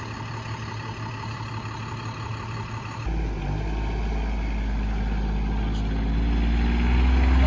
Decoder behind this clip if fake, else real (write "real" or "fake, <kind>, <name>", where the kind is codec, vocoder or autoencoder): real